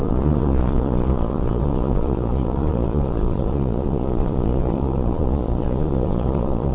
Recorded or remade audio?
remade